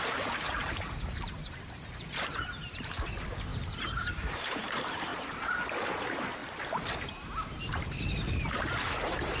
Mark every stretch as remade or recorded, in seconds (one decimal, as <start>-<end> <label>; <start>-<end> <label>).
0.0-5.1 remade; 5.1-5.9 recorded; 5.9-6.4 remade; 6.4-8.5 recorded; 8.5-9.4 remade